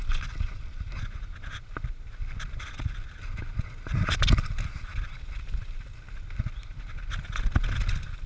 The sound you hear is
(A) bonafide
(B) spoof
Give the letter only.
A